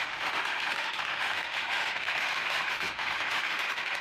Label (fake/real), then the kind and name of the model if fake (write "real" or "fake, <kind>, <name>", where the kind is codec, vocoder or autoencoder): fake, autoencoder, DAC-VAE